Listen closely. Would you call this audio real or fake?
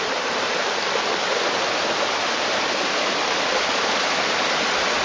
real